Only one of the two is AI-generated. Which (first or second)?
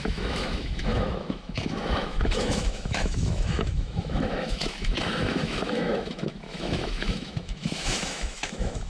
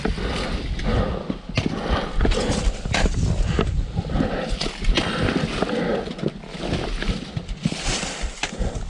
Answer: first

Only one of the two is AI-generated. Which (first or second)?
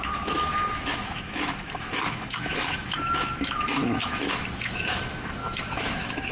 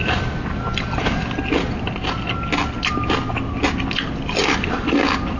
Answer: first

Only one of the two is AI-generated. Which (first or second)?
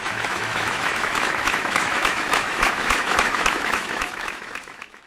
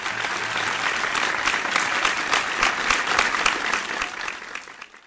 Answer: first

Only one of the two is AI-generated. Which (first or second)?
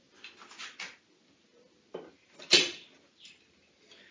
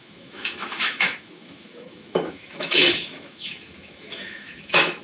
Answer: second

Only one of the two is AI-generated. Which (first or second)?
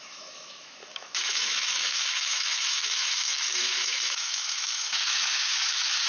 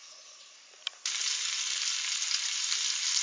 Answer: first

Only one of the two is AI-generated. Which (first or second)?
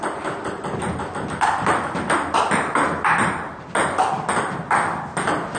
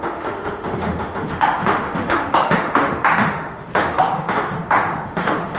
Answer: second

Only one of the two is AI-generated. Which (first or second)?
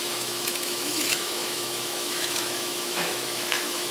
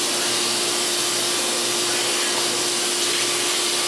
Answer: first